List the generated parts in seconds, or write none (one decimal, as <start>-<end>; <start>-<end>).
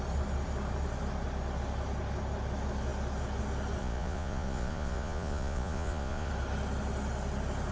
3.8-6.3